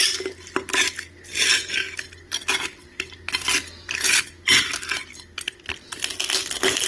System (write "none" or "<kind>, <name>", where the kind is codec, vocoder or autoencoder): none